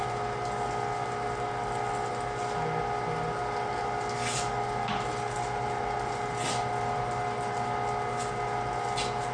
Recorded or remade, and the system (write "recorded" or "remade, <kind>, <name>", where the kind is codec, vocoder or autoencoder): recorded